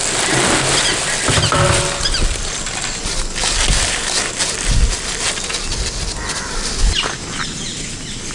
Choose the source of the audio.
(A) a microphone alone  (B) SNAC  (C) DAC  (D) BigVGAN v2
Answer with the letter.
A